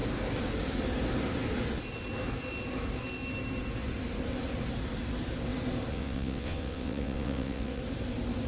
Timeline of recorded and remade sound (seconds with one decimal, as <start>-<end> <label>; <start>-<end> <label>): 0.0-5.9 recorded; 5.9-7.8 remade; 7.8-8.5 recorded